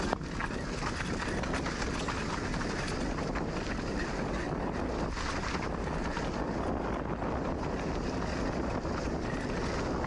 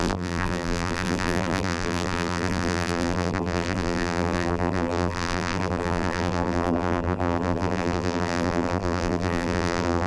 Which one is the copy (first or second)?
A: second